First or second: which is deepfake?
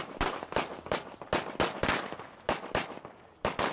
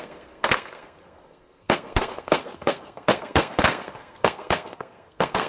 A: second